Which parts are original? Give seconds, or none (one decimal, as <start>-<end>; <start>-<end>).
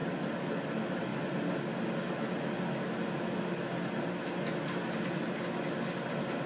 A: 0.0-6.5